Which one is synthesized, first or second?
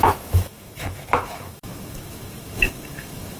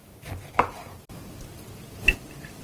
first